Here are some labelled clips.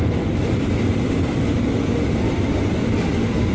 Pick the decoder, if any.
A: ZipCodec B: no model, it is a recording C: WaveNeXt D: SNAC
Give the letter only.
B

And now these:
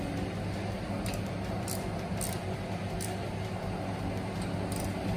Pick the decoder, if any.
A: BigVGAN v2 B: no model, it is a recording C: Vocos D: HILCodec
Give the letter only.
B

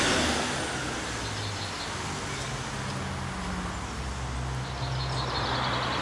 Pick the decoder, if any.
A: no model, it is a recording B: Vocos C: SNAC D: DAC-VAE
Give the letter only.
A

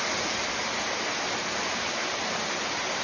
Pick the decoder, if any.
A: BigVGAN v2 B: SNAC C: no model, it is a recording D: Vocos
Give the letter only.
C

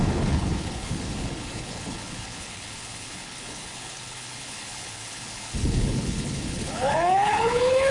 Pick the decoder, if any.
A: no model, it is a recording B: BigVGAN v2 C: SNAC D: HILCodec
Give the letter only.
D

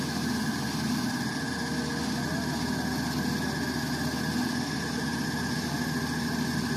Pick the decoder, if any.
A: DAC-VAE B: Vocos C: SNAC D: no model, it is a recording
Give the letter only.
D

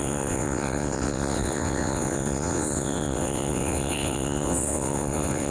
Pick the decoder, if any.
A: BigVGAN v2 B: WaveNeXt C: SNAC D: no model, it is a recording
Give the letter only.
B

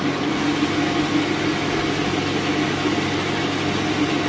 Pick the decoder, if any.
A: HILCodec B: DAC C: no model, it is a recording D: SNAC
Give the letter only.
C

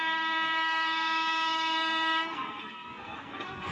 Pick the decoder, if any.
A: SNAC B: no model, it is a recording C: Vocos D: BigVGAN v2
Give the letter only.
A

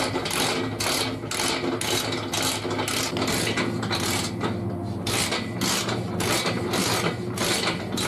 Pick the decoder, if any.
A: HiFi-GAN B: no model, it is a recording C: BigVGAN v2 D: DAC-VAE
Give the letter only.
B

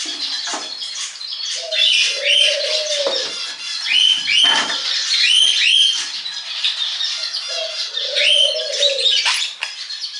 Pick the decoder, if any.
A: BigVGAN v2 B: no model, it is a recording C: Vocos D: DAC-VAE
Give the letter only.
B